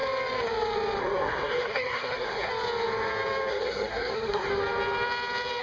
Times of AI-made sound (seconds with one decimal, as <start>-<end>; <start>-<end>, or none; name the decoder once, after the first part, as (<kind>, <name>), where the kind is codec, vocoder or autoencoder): 1.0-2.5 (codec, SNAC); 3.5-4.5